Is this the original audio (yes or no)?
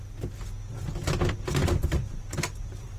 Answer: yes